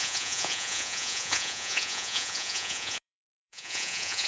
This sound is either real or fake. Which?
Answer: fake